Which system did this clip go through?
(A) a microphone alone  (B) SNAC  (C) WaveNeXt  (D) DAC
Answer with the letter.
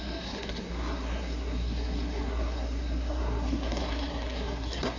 B